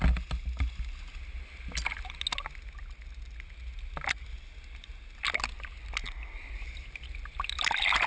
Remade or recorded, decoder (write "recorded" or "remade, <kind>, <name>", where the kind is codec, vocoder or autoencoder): recorded